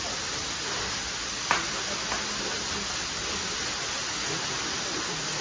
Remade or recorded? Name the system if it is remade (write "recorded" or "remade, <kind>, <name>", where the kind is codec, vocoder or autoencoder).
recorded